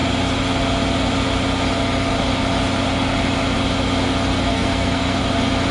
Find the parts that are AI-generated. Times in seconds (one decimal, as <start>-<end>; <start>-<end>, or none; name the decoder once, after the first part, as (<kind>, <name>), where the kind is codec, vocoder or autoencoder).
4.5-5.2 (codec, SNAC)